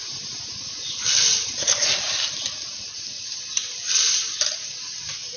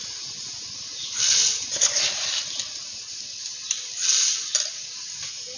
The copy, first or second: first